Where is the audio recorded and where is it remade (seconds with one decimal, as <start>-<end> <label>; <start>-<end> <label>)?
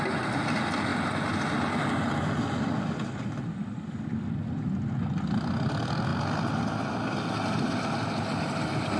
0.0-9.0 recorded